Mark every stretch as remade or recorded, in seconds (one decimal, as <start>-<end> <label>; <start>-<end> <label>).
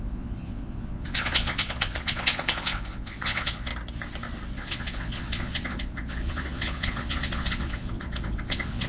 0.0-3.7 remade; 3.7-4.5 recorded; 4.5-8.9 remade